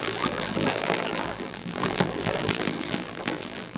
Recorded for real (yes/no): no